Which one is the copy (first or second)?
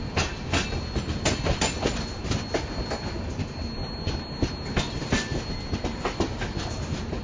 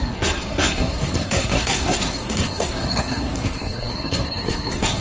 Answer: second